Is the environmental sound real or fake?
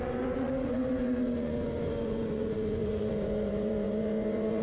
fake